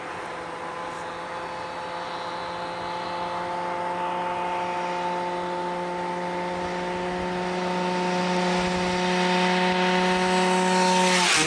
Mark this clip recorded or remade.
recorded